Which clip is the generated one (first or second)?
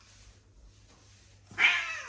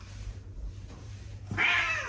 second